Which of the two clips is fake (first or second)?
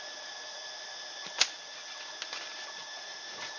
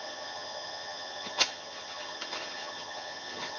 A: second